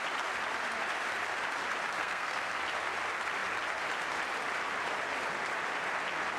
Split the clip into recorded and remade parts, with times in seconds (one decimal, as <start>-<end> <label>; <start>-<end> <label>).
0.0-2.0 recorded; 2.0-2.6 remade; 2.6-6.4 recorded